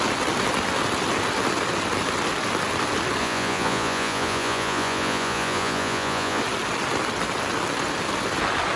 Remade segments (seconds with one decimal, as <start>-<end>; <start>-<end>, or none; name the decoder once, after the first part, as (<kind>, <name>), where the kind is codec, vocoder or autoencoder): 3.2-6.4 (vocoder, Vocos)